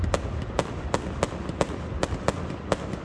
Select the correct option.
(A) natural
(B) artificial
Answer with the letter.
A